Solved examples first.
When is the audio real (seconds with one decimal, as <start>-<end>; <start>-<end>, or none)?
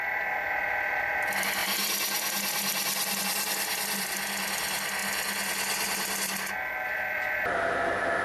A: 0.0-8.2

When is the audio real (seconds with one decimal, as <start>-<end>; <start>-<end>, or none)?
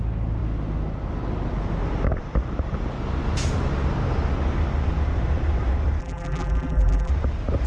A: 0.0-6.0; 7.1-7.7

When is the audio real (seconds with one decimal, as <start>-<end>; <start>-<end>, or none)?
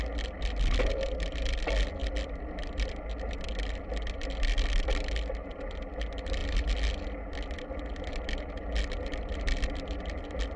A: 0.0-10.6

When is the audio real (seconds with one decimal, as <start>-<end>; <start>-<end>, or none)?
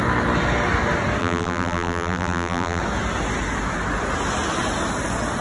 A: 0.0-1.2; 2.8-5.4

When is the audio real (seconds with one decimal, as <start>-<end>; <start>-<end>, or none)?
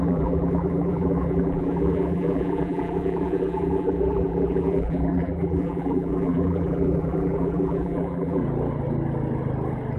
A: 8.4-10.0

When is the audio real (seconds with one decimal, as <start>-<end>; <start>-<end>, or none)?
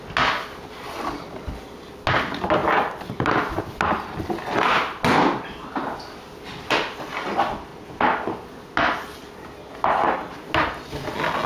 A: 0.0-2.6; 3.6-11.5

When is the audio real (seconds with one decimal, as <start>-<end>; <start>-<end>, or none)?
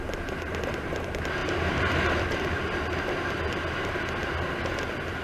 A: 0.0-5.2